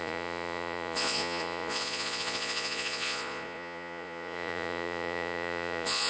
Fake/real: fake